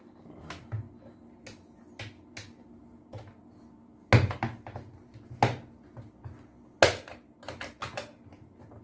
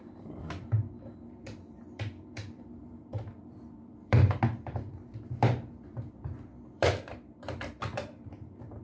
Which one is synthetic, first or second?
second